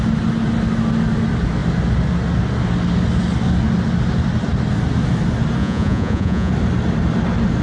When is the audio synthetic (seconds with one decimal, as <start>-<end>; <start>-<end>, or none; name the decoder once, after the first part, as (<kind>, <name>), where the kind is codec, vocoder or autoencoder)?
5.6-6.5 (vocoder, Vocos)